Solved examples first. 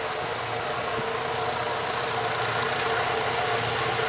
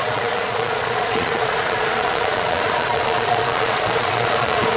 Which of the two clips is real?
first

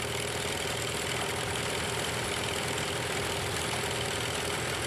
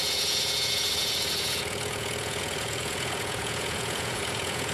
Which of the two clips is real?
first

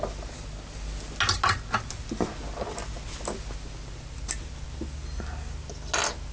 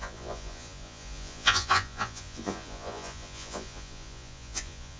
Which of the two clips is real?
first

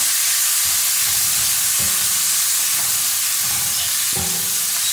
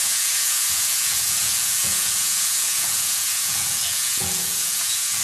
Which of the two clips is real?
first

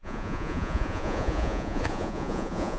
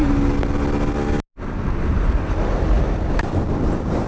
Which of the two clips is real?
second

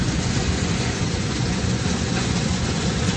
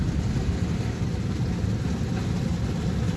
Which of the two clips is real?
second